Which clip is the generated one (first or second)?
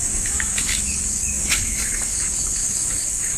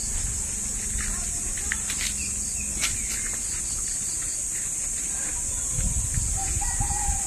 first